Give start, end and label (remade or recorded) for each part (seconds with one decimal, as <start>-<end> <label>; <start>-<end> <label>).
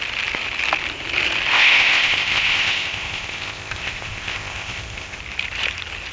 0.0-1.5 recorded; 1.5-5.2 remade; 5.2-6.1 recorded